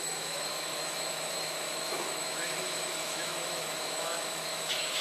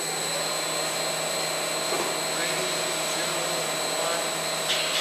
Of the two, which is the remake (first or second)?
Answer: first